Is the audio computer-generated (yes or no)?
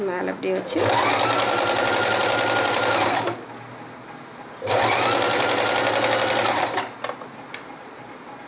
no